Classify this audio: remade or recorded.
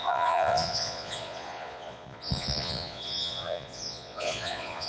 remade